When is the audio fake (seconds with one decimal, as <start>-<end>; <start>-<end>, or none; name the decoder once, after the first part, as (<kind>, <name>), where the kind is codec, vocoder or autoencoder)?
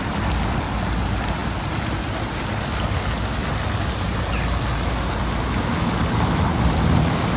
none